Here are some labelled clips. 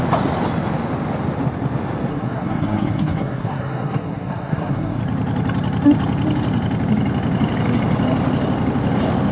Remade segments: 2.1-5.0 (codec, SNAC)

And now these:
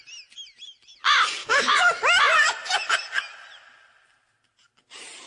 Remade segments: 1.4-2.2 (autoencoder, DAC-VAE)

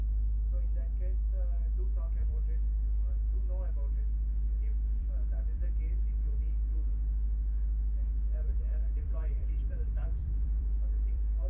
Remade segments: 2.2-3.1 (vocoder, BigVGAN v2); 5.0-5.6; 6.4-6.9; 8.5-11.5

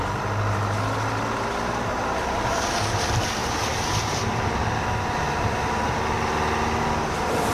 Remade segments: none